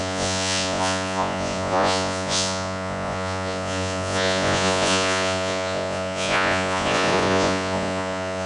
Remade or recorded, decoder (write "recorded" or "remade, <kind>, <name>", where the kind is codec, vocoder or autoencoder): remade, vocoder, Vocos